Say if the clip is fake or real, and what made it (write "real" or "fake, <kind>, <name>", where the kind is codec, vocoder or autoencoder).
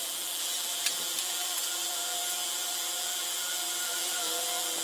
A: fake, vocoder, BigVGAN v2